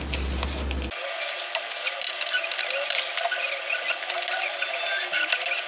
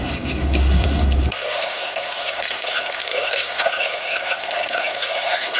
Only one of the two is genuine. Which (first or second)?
first